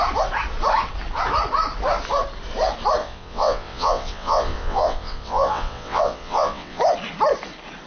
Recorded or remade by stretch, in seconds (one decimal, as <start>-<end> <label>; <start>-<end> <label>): 0.0-3.0 recorded; 3.0-6.8 remade; 6.8-7.9 recorded